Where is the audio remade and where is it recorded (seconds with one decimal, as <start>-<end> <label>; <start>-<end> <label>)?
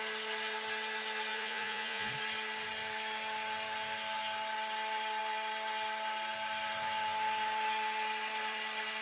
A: 0.0-1.3 recorded; 1.3-2.1 remade; 2.1-9.0 recorded